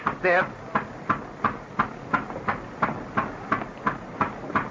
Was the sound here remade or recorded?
recorded